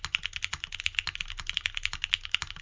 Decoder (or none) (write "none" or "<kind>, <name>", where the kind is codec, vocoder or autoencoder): none